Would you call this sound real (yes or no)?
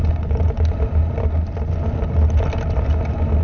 yes